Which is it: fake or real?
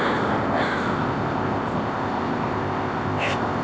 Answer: fake